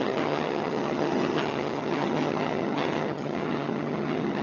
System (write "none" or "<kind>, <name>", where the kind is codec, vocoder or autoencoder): vocoder, HiFi-GAN